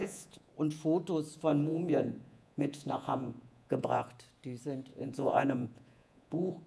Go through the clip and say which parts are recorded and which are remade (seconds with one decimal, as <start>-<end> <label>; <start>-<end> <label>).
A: 0.0-0.5 remade; 0.5-1.5 recorded; 1.5-4.1 remade; 4.1-4.9 recorded; 4.9-6.7 remade